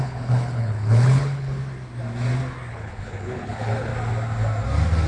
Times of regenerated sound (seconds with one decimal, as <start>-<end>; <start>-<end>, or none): 0.0-1.6; 2.7-3.9